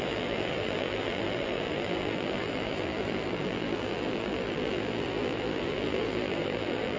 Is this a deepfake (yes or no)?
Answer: yes